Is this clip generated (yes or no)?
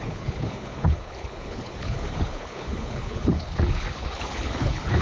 yes